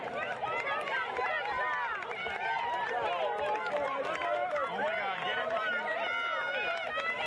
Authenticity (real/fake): real